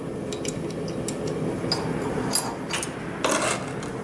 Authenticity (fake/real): real